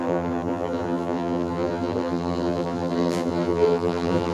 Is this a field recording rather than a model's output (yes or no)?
no